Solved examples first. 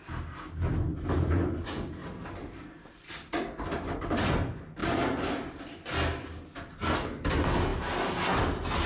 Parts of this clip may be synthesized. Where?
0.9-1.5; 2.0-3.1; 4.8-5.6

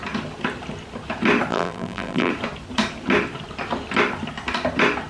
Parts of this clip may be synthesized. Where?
1.5-2.3

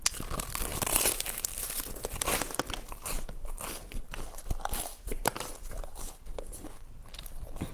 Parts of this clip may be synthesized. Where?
0.7-4.0; 4.9-6.7